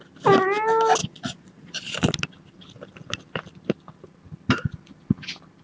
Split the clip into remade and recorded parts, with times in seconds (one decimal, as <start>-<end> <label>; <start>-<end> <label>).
0.0-1.0 recorded; 1.0-2.1 remade; 2.1-5.6 recorded